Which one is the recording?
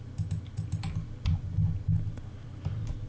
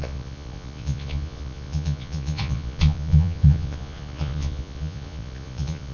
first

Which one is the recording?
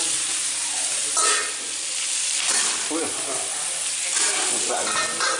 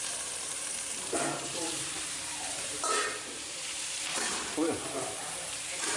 first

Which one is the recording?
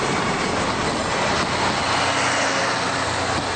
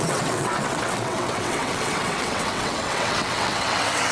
first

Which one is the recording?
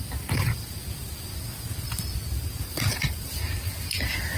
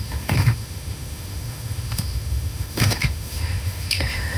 first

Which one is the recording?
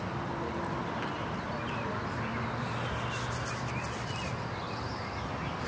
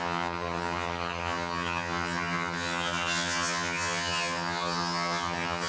first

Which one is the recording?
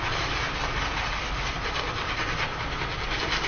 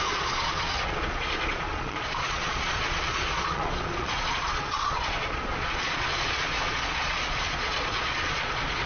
first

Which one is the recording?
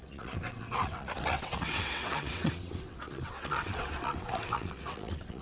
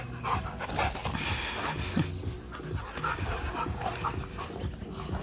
second